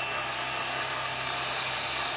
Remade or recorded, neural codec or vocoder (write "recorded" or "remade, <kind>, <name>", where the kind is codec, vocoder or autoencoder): recorded